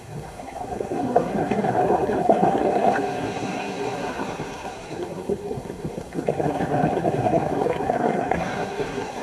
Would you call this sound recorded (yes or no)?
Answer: no